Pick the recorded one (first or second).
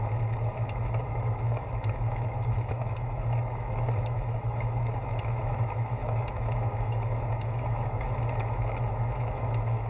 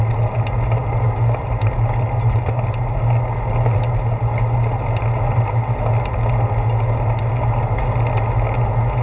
second